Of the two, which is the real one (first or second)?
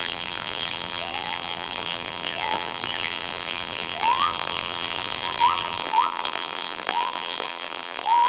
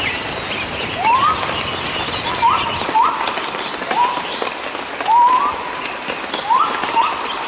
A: second